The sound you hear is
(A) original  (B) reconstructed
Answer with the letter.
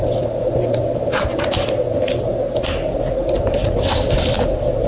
A